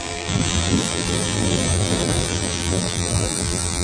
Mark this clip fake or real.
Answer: fake